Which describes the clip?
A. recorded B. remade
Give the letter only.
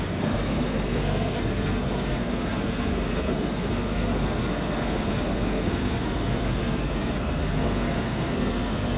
B